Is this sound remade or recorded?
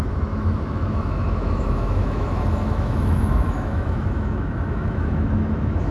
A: remade